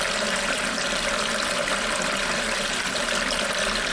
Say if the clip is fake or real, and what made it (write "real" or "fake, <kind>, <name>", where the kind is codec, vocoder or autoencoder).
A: real